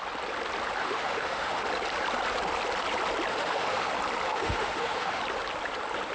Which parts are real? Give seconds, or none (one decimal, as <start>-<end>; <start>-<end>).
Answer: 0.0-0.8; 1.6-3.3; 3.9-4.3; 5.2-6.1